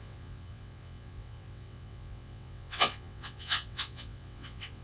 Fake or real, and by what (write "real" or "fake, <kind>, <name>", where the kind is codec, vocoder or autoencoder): fake, vocoder, WaveNeXt